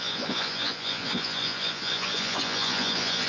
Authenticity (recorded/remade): remade